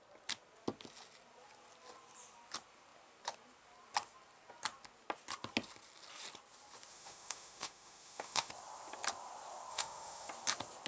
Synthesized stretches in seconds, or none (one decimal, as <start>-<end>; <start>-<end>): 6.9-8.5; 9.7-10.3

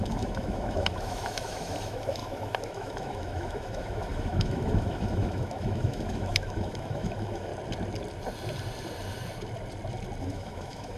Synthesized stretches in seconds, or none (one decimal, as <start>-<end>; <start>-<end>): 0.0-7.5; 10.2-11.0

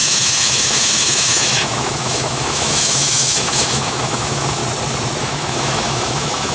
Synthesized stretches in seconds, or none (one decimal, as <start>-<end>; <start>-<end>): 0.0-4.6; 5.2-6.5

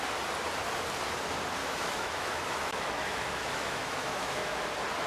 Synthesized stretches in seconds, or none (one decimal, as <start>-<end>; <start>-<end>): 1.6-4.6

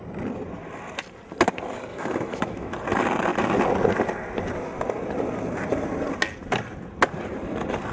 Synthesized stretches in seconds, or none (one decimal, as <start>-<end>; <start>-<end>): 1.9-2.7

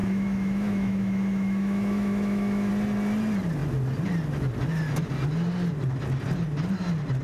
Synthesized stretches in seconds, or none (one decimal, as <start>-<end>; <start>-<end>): 0.0-2.7

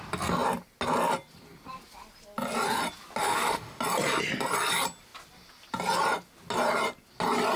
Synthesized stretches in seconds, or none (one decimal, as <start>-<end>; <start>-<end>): 3.2-3.8

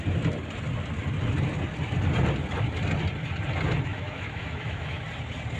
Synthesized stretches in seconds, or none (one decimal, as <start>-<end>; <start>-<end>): 3.9-5.0